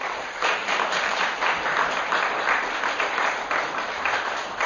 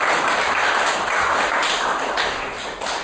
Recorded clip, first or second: second